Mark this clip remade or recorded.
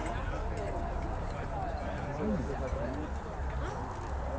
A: recorded